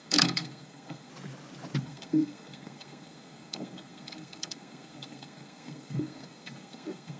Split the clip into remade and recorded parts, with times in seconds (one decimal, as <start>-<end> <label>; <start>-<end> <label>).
0.0-1.1 remade; 1.1-1.8 recorded; 1.8-7.2 remade